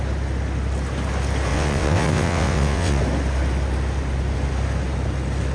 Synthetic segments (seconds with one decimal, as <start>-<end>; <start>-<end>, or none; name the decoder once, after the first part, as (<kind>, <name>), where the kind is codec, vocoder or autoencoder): 1.5-3.0 (vocoder, WaveNeXt)